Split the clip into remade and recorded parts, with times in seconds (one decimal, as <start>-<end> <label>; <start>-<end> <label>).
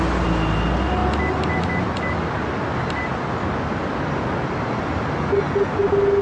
0.0-6.2 recorded